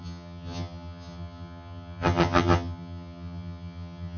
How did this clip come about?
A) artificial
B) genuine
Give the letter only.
A